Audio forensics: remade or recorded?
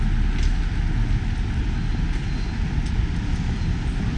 recorded